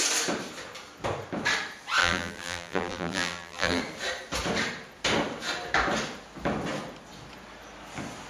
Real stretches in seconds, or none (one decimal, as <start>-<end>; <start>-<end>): 0.0-2.0; 3.8-8.3